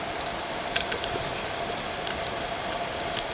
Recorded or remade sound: recorded